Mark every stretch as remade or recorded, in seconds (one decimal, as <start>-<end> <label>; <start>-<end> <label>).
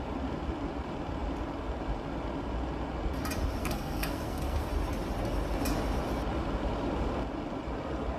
0.0-3.6 recorded; 3.6-4.7 remade; 4.7-8.2 recorded